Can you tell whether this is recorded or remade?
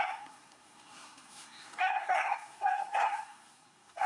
remade